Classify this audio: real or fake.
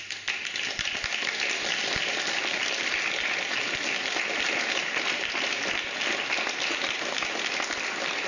real